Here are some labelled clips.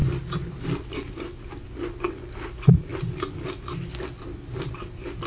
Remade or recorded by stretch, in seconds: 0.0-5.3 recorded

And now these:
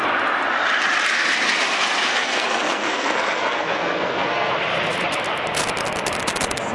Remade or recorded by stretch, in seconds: 0.0-2.1 recorded; 2.1-4.5 remade; 4.5-6.7 recorded

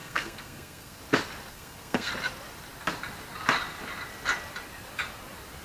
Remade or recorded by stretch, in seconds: 0.0-1.0 remade; 1.0-1.5 recorded; 1.5-2.1 remade; 2.1-5.6 recorded

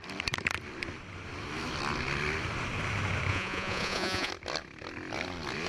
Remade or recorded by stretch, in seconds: 0.0-3.3 recorded; 3.3-4.3 remade; 4.3-5.7 recorded

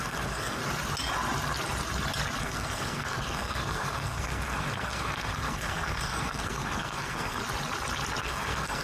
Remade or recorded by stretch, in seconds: 0.0-0.6 remade; 0.6-2.4 recorded; 2.4-7.4 remade; 7.4-8.2 recorded; 8.2-8.8 remade